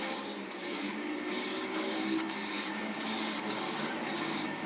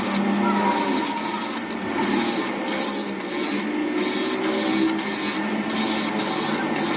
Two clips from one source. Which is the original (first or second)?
second